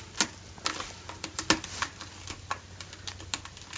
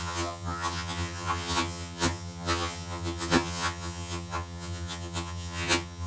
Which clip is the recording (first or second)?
first